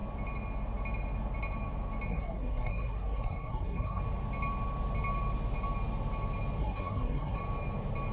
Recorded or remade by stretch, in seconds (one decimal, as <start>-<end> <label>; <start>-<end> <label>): 0.0-2.1 recorded; 2.1-4.0 remade; 4.0-6.6 recorded; 6.6-7.4 remade; 7.4-8.1 recorded